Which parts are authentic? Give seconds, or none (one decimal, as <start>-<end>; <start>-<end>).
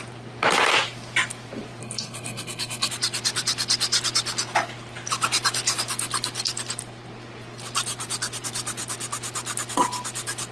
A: 0.0-1.8; 2.9-10.5